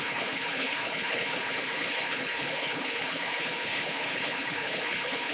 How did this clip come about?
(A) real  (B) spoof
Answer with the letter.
B